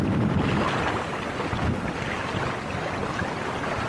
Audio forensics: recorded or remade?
recorded